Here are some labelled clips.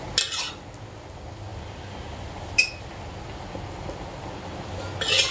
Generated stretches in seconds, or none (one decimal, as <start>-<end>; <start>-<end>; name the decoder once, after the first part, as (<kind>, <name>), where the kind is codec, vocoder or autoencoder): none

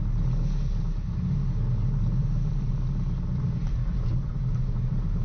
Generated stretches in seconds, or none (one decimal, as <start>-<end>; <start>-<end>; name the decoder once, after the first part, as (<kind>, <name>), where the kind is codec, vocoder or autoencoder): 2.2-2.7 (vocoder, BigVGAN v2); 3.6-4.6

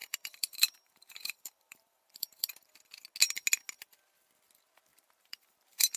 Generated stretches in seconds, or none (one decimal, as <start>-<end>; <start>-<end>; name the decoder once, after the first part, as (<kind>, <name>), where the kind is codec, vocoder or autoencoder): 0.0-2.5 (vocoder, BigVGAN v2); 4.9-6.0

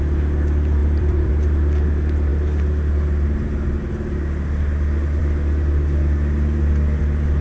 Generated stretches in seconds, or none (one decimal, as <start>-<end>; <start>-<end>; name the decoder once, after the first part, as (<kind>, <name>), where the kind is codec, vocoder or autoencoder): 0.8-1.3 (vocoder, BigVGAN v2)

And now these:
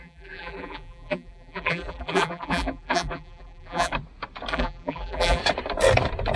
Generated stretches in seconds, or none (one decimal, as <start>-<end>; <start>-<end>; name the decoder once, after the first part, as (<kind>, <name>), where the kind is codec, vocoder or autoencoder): 0.0-3.9 (vocoder, BigVGAN v2); 4.5-5.4